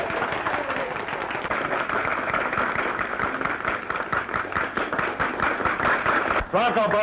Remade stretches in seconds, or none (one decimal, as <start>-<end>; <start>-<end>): none